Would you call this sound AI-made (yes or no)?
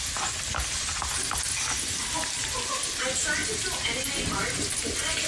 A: no